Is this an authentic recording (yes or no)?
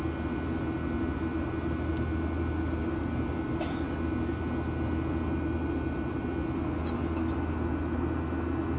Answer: yes